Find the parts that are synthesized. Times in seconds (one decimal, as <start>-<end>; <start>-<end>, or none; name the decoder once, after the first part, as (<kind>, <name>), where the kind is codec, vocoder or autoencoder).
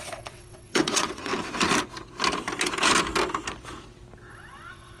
0.0-1.3 (vocoder, WaveNeXt); 4.3-5.0